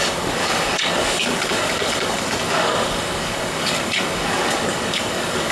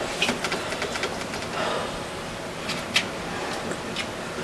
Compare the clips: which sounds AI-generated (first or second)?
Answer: first